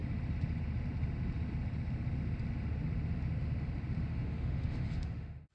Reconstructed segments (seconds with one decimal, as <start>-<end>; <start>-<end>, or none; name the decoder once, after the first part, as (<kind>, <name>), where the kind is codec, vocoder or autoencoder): 4.1-5.5 (autoencoder, DAC-VAE)